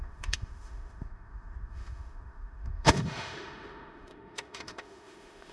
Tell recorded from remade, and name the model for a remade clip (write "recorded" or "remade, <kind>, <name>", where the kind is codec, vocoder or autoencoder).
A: remade, autoencoder, DAC-VAE